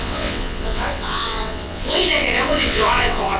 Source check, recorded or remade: remade